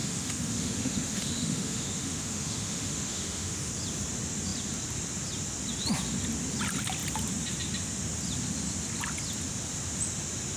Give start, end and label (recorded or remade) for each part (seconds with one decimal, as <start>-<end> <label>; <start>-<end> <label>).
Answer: 0.0-3.7 remade; 3.7-10.6 recorded